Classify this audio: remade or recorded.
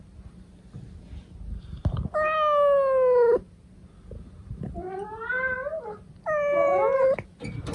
recorded